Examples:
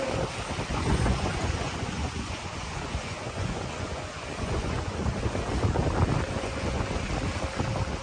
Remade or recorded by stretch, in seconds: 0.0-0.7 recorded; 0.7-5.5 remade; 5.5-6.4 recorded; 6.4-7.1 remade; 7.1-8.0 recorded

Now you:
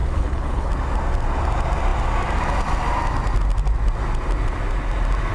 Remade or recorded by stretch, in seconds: 0.0-0.7 remade; 0.7-5.3 recorded

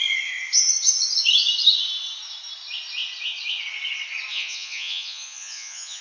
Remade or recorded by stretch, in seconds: 0.0-4.3 recorded; 4.3-6.0 remade

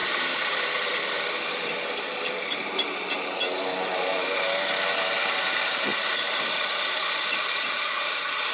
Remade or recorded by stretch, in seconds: 0.0-8.5 remade

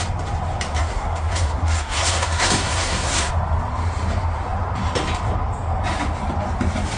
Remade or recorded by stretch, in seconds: 0.0-0.8 recorded; 0.8-3.3 remade; 3.3-7.0 recorded